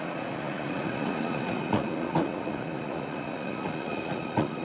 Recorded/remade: remade